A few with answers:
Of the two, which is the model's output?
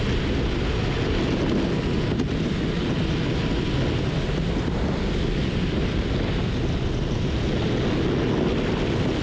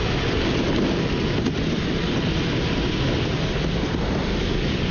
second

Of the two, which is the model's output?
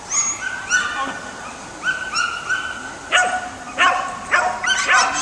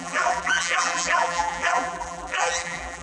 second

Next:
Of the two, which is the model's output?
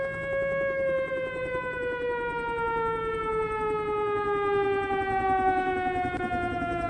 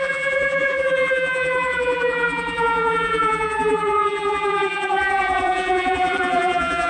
second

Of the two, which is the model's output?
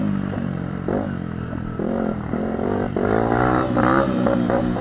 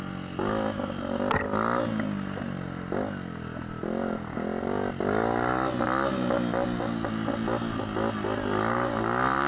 first